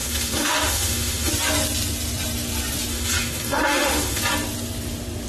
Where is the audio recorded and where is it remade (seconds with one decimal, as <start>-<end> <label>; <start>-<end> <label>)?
0.0-1.3 remade; 1.3-2.9 recorded; 2.9-4.2 remade; 4.2-5.3 recorded

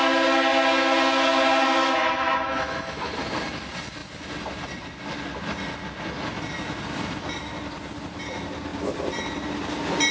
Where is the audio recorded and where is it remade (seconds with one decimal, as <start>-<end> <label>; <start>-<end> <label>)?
0.0-1.8 recorded; 1.8-3.1 remade; 3.1-10.1 recorded

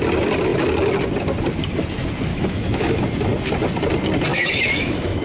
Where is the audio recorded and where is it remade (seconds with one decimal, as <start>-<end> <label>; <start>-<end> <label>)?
0.0-2.3 recorded; 2.3-3.0 remade; 3.0-4.3 recorded; 4.3-5.2 remade

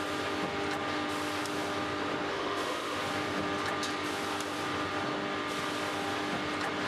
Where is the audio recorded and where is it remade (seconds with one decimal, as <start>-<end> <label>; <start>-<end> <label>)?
0.0-2.3 recorded; 2.3-3.0 remade; 3.0-6.9 recorded

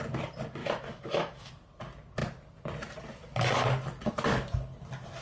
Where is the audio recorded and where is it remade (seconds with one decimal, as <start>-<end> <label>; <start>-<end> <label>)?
0.0-0.6 recorded; 0.6-1.5 remade; 1.5-5.2 recorded